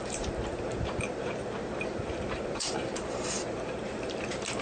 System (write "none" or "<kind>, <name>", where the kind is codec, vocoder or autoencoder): vocoder, BigVGAN v2